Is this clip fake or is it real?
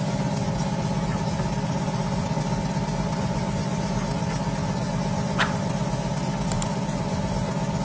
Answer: real